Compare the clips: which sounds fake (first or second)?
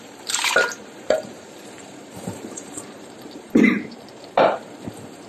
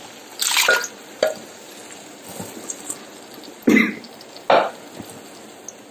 first